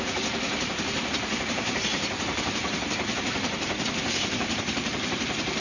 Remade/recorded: remade